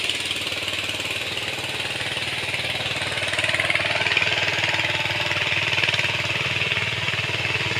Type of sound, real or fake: real